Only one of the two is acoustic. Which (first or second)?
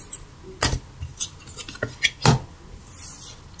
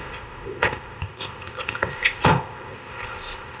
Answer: first